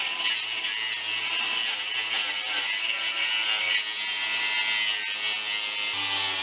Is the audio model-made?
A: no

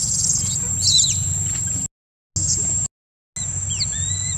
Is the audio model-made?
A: no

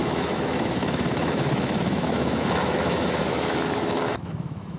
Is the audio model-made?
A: yes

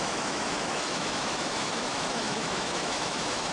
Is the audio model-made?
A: yes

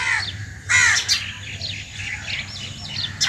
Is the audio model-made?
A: no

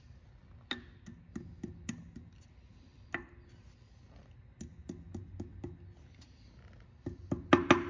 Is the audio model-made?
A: no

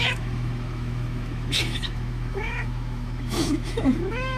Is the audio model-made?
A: yes